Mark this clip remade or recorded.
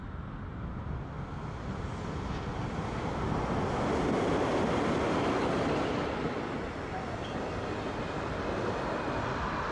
recorded